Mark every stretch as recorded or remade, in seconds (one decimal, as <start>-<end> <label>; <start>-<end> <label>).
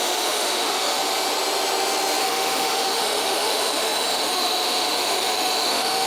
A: 0.0-1.0 remade; 1.0-2.2 recorded; 2.2-6.1 remade